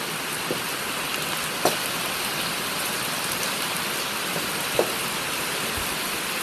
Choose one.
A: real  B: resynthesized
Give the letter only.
A